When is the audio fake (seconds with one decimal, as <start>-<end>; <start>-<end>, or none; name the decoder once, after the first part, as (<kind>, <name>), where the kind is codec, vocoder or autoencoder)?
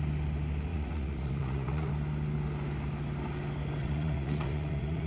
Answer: 0.7-1.9 (vocoder, Vocos); 3.8-5.1